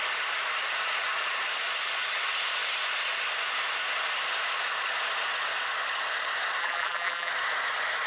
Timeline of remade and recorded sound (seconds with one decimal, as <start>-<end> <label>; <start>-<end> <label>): 0.0-6.6 recorded; 6.6-7.3 remade; 7.3-8.1 recorded